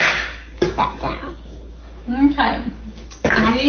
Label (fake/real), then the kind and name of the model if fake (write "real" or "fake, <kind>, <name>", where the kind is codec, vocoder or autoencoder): fake, codec, DAC